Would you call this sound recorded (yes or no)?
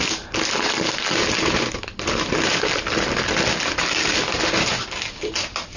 yes